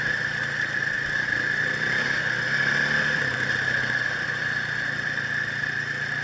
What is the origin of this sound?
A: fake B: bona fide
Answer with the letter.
B